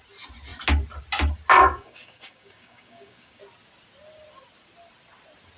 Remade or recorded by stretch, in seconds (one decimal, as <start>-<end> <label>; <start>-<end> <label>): 0.0-1.5 recorded; 1.5-3.4 remade; 3.4-5.6 recorded